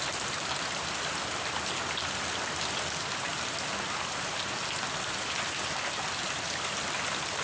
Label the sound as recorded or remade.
recorded